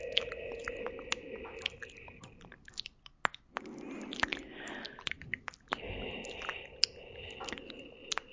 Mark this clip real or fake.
real